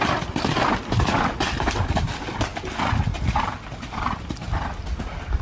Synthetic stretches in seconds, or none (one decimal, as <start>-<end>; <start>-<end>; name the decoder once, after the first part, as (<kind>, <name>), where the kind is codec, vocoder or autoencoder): none